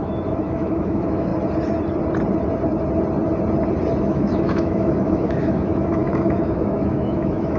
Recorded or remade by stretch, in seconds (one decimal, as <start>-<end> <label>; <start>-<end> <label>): 0.0-1.3 remade; 1.3-4.0 recorded; 4.0-7.6 remade